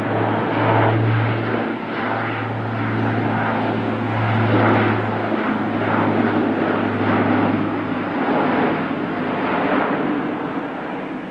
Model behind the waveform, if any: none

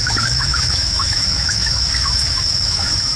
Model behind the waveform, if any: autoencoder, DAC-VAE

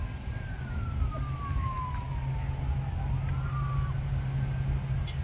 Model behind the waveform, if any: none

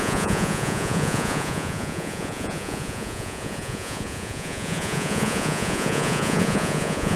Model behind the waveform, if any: vocoder, Vocos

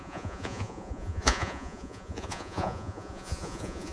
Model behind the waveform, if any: vocoder, Vocos